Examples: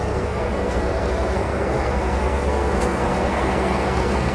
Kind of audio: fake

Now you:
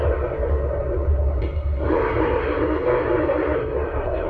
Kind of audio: fake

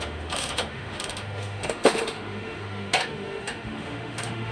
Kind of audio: fake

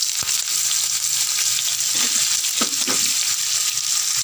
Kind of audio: real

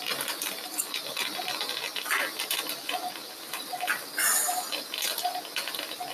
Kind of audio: real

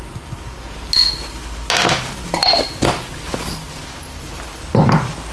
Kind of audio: real